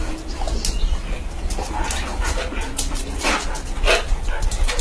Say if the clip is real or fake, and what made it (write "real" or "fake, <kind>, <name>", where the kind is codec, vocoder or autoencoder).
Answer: real